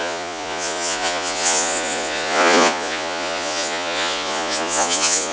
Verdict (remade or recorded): remade